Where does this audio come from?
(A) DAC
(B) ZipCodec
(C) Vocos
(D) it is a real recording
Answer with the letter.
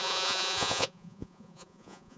C